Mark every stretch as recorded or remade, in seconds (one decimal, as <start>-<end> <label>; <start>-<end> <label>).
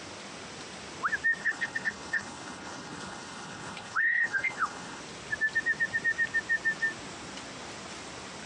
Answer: 0.0-1.4 recorded; 1.4-5.0 remade; 5.0-8.5 recorded